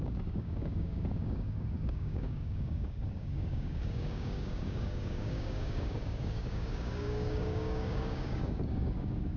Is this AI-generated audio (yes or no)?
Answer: yes